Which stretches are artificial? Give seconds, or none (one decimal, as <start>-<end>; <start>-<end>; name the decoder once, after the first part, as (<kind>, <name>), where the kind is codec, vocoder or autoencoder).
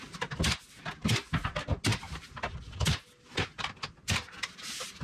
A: none